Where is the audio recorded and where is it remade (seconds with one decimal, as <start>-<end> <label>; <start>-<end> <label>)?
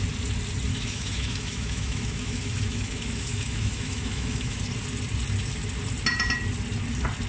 0.0-0.7 recorded; 0.7-4.6 remade; 4.6-7.3 recorded